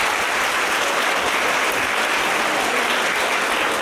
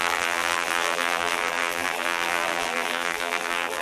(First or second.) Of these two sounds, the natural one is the first